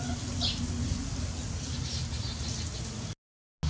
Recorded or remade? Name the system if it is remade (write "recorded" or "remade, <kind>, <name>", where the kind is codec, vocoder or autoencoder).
recorded